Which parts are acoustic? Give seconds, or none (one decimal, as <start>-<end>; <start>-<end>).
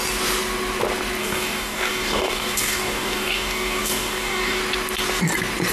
0.0-1.2; 4.6-5.7